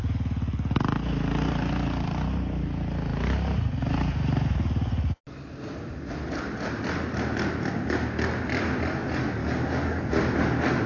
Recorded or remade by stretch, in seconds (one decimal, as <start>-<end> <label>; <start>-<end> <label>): 0.0-9.4 recorded; 9.4-10.1 remade; 10.1-10.9 recorded